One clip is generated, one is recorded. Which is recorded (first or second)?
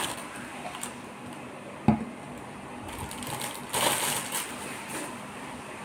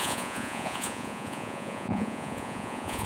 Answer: first